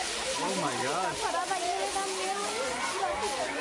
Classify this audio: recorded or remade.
recorded